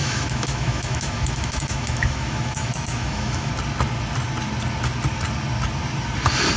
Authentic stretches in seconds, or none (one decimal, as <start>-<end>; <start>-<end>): 3.5-6.6